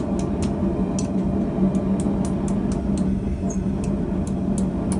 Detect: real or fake real